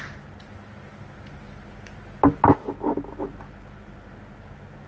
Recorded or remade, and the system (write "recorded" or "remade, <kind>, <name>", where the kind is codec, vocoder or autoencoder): recorded